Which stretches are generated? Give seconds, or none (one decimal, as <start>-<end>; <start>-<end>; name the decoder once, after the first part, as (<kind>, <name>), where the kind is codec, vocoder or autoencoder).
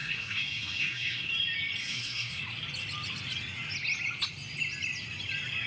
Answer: 0.0-1.3 (codec, SNAC); 1.8-2.4